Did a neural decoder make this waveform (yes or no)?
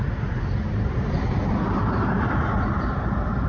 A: yes